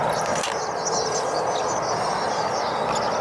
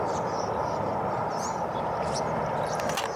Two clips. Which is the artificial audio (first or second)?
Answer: second